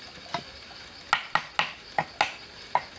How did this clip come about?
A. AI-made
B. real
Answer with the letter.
B